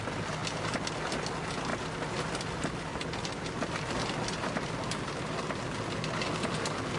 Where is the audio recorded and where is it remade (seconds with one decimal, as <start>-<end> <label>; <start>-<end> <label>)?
0.0-0.4 recorded; 0.4-1.1 remade; 1.1-2.9 recorded; 2.9-5.5 remade; 5.5-7.0 recorded